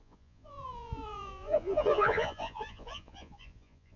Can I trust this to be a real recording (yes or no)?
no